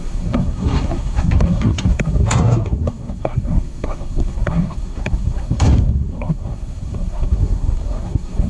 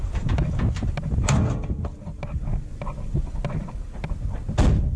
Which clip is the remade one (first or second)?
first